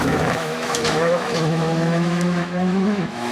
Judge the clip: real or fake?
fake